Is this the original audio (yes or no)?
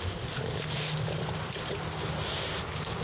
yes